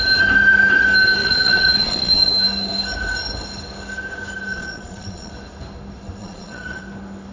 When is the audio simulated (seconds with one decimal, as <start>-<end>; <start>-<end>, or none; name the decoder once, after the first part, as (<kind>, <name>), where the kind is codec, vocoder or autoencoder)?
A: 1.2-2.3 (vocoder, Vocos); 4.5-5.3; 6.2-6.8